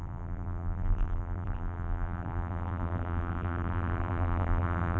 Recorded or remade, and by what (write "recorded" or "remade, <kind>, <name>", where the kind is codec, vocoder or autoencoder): remade, vocoder, BigVGAN v2